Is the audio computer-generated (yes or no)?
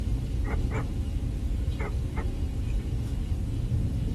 no